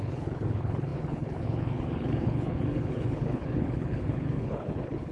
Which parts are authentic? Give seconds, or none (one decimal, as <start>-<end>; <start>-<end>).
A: none